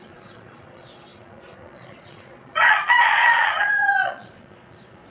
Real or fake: fake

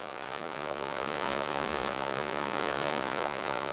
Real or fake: fake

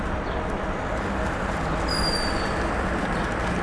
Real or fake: real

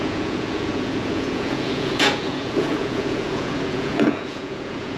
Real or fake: fake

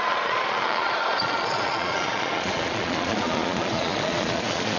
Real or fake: fake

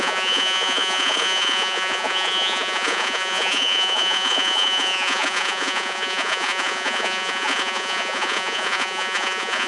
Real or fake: fake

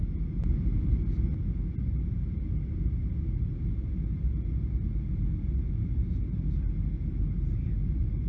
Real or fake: real